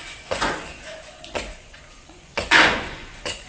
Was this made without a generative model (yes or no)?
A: no